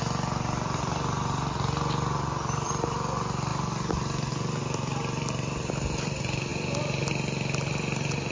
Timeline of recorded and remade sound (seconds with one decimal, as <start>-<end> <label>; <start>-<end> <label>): 0.0-3.5 remade; 3.5-4.3 recorded; 4.3-8.3 remade